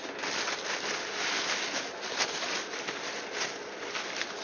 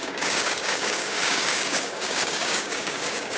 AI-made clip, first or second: second